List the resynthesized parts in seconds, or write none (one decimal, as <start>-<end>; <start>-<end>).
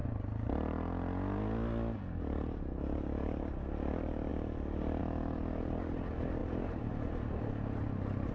6.4-6.9